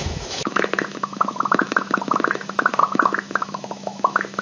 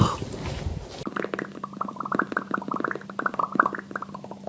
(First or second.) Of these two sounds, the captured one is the second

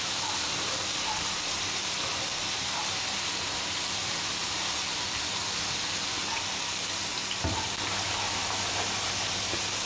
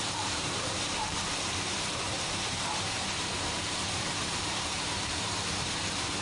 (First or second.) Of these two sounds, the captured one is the first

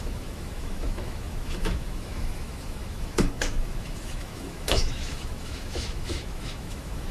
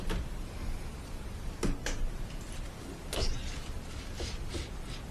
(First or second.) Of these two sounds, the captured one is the second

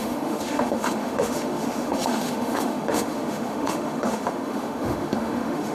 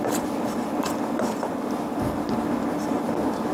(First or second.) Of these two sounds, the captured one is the second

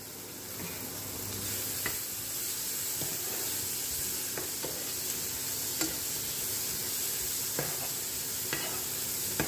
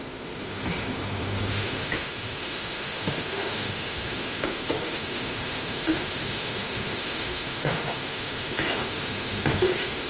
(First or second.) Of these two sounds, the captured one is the first